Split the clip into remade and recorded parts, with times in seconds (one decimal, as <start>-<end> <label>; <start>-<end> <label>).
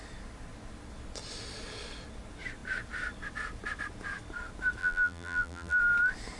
0.0-4.8 recorded; 4.8-5.8 remade; 5.8-6.4 recorded